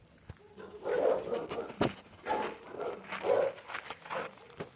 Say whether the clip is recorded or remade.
recorded